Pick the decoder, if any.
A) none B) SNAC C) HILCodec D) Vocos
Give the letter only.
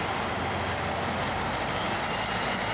A